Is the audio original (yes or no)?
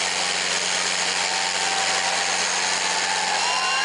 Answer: yes